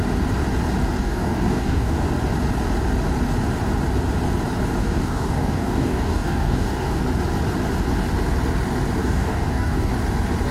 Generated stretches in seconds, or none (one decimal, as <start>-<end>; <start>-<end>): 1.0-2.0; 4.8-7.0; 9.0-9.9